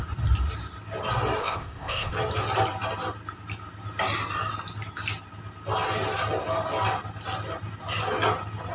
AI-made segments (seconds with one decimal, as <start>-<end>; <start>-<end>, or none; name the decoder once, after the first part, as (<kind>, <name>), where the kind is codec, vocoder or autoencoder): 1.4-2.1 (codec, ZipCodec)